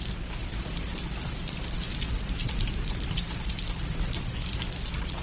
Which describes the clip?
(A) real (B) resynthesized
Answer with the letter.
A